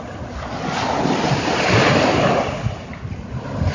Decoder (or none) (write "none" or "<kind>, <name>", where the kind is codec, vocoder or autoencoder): none